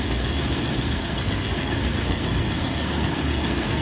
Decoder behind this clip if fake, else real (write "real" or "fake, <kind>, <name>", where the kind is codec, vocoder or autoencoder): fake, codec, SNAC